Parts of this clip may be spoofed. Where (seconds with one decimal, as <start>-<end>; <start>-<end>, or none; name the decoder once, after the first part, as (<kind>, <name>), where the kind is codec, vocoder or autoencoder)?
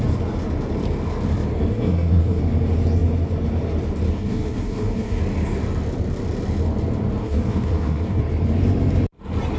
1.7-2.4 (codec, SNAC); 4.1-5.2; 7.2-8.2